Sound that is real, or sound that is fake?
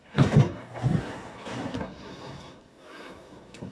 fake